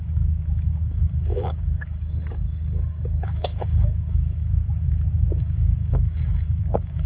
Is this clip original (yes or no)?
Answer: no